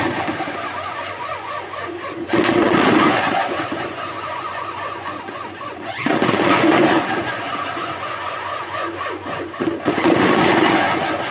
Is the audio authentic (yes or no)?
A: no